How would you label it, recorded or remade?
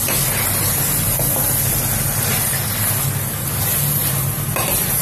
recorded